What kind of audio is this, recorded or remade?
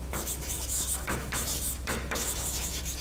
remade